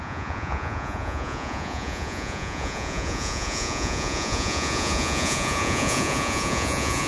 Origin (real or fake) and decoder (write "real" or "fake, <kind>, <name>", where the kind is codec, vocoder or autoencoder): fake, vocoder, Vocos